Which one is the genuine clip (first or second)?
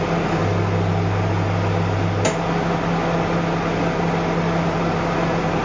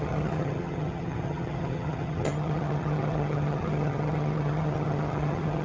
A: first